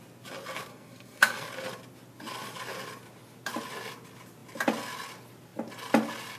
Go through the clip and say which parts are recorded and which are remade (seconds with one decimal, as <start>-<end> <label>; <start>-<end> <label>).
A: 0.0-0.7 recorded; 0.7-1.5 remade; 1.5-6.4 recorded